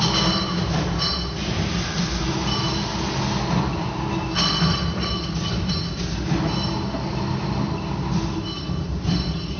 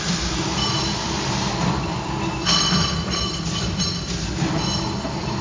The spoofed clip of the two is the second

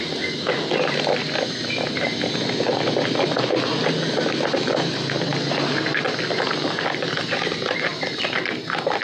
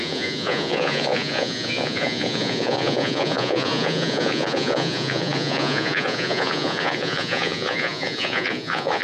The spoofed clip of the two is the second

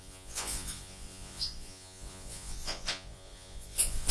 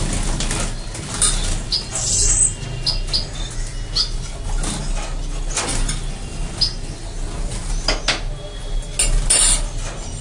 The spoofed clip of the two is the first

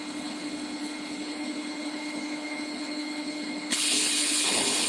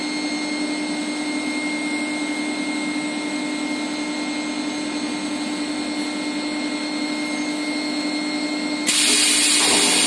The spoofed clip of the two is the first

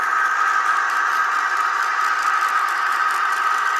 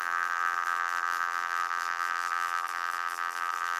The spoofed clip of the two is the second